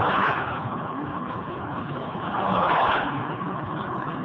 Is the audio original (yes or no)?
no